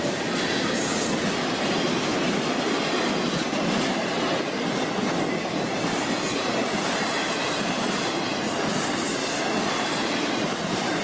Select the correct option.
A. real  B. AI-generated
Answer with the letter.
A